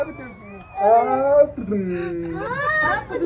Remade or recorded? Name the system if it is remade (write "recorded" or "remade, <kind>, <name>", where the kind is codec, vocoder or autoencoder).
recorded